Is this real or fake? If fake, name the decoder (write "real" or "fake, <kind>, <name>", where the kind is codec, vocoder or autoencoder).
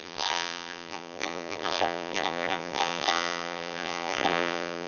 fake, vocoder, BigVGAN v2